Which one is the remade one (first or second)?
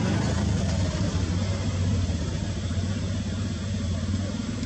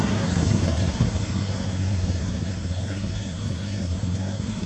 second